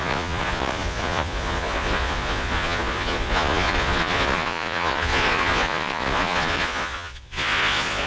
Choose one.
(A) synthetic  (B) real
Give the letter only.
A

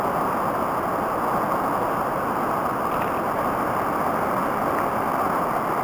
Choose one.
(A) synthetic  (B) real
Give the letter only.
B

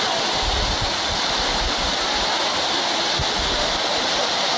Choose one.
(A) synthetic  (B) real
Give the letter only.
B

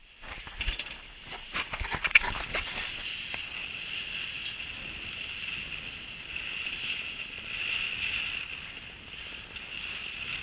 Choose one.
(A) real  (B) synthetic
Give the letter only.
A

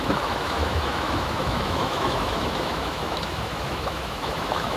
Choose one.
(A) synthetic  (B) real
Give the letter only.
A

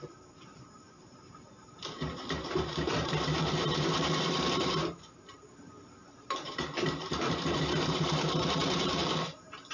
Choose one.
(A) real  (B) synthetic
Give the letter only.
B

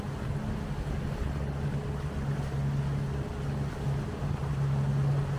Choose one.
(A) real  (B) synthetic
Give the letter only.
A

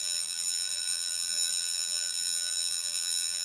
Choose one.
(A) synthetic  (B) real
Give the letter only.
A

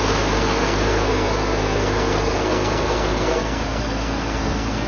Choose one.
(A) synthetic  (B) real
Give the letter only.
A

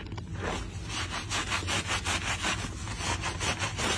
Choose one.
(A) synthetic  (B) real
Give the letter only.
B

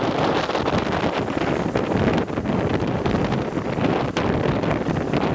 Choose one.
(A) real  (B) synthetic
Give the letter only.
A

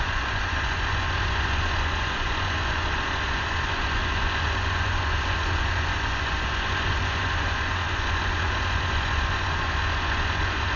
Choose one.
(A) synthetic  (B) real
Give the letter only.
A